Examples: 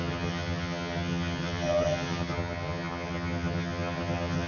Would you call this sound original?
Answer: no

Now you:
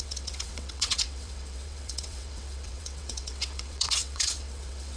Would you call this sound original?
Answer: no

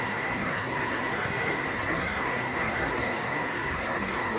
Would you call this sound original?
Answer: no